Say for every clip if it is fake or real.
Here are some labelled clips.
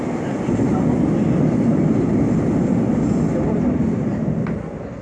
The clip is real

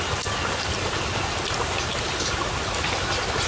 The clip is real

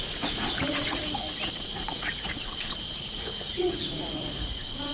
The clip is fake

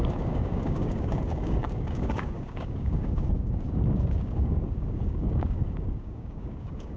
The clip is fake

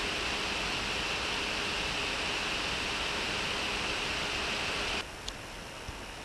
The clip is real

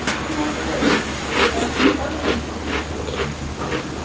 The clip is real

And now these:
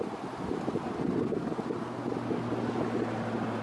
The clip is real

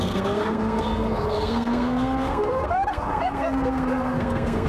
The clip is fake